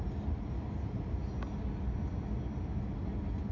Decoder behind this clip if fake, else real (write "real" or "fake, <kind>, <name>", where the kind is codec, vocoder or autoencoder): real